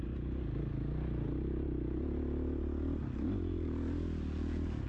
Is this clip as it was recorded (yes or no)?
yes